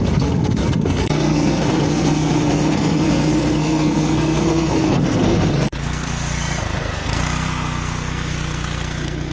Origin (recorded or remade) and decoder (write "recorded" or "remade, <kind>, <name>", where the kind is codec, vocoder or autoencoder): remade, codec, SNAC